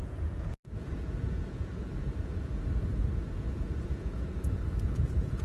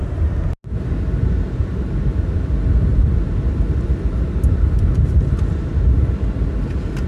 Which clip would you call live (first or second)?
second